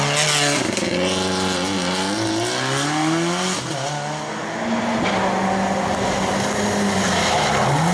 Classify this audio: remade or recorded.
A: recorded